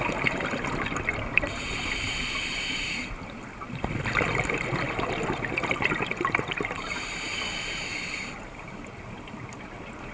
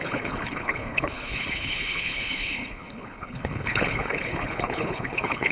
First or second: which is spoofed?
second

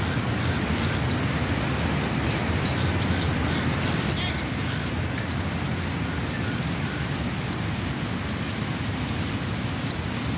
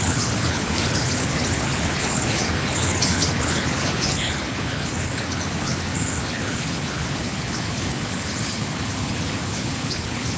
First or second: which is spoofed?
second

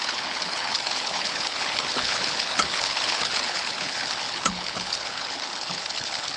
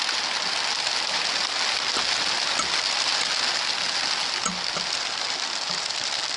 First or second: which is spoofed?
first